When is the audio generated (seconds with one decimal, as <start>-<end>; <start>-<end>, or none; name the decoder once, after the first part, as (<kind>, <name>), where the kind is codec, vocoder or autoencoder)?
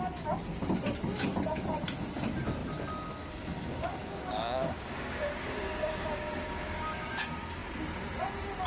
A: 4.0-7.0 (codec, DAC)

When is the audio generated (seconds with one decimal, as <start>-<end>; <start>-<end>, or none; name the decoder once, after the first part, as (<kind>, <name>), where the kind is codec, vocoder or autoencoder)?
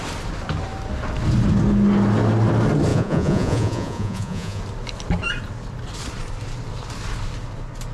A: 2.9-4.6 (vocoder, Vocos)